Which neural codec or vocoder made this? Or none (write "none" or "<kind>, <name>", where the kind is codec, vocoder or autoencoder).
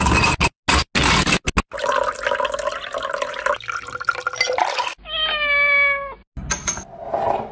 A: none